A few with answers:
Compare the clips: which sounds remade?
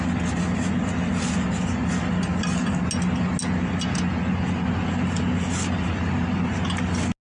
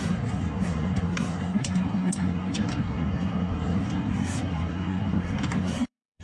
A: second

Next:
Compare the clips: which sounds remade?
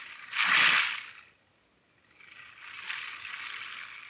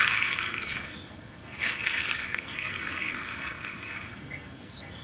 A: second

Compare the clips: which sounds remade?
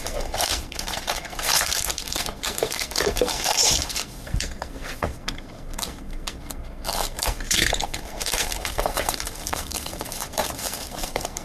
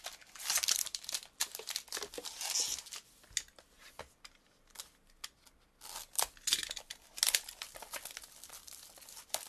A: first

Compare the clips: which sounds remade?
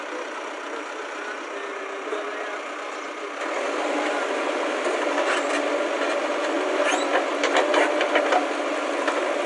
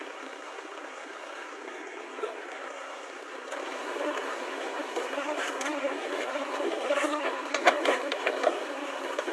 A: second